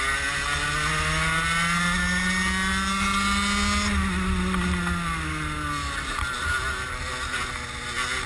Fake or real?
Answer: real